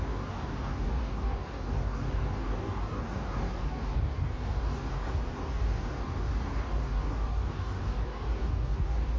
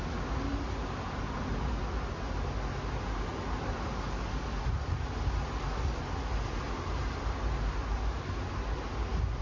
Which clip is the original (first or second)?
second